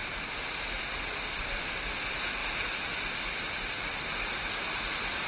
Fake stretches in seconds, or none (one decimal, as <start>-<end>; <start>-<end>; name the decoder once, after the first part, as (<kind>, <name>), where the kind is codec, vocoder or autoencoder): none